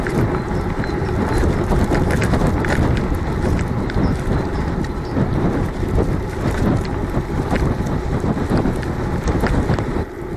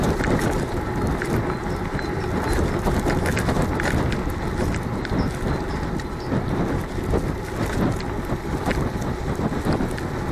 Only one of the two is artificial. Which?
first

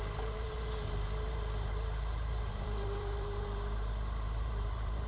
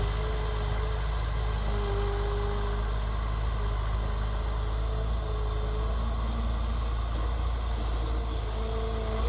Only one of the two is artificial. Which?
first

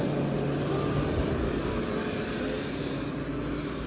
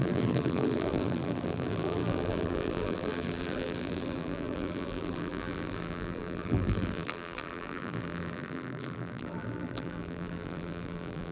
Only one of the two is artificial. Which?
second